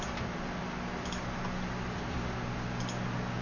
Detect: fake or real real